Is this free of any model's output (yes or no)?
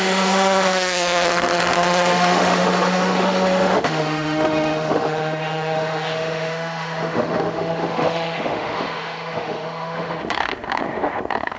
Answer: no